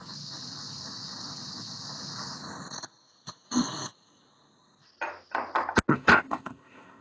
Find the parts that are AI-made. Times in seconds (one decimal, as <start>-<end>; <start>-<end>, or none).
5.9-7.0